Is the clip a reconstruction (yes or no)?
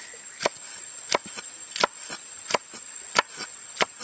no